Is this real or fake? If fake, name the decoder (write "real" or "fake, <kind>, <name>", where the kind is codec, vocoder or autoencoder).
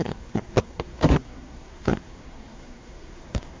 fake, codec, SNAC